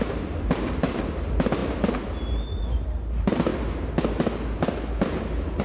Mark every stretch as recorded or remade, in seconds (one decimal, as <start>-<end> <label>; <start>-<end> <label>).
0.0-5.6 recorded